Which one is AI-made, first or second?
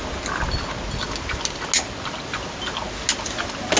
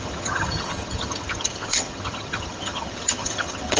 second